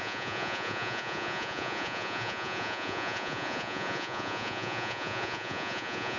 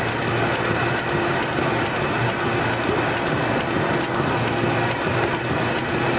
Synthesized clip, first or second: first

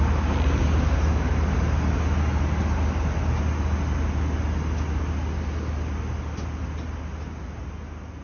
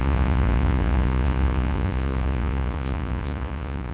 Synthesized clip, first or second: second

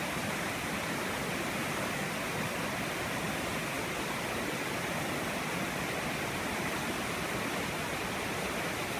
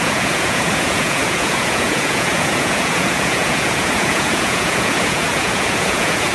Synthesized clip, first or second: second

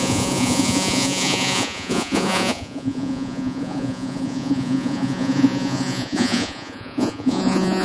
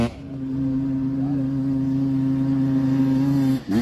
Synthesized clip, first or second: first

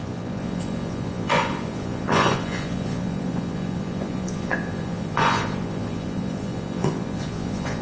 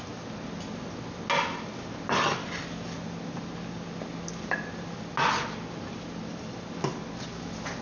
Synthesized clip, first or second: first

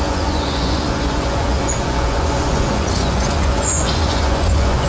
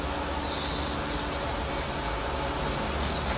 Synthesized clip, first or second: first